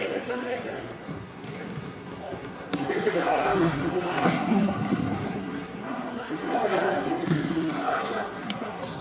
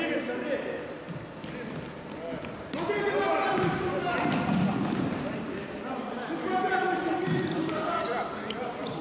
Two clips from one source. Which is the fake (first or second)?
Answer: first